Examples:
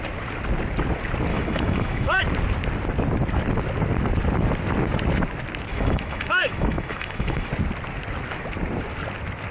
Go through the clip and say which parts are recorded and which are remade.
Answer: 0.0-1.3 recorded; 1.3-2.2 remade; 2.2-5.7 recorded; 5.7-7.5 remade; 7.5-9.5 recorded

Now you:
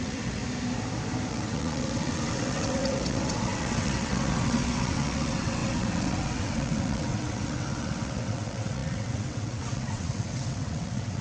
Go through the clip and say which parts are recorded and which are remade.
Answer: 0.0-0.4 remade; 0.4-1.3 recorded; 1.3-11.2 remade

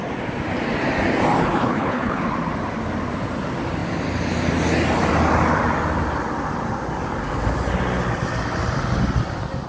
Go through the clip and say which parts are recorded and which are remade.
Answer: 0.0-1.4 recorded; 1.4-2.2 remade; 2.2-9.7 recorded

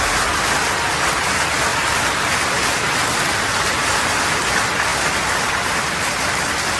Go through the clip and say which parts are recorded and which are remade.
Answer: 0.0-6.8 recorded

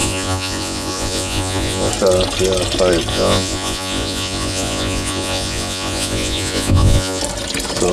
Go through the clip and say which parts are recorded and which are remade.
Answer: 0.0-1.9 remade; 1.9-3.1 recorded; 3.1-7.2 remade; 7.2-7.9 recorded